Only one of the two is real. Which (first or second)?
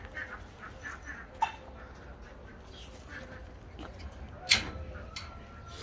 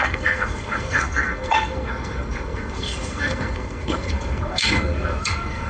first